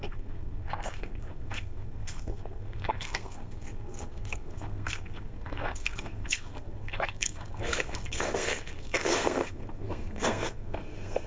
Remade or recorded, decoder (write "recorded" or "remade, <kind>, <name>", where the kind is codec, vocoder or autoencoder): remade, codec, SNAC